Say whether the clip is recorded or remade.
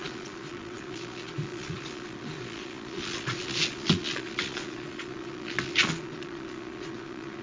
remade